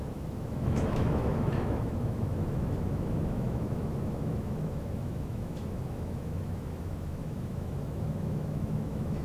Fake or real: fake